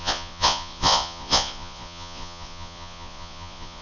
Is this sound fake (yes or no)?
yes